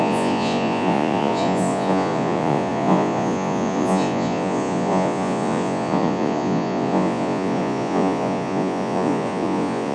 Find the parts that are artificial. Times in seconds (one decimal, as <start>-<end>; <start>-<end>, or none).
0.0-9.9